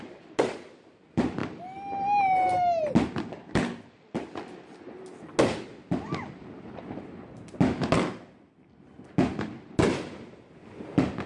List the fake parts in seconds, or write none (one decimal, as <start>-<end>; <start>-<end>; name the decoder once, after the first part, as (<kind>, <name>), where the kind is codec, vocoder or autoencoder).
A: none